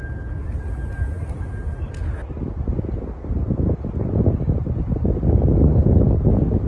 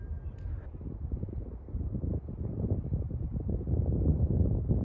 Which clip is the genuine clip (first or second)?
first